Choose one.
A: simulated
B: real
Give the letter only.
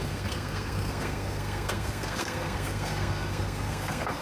A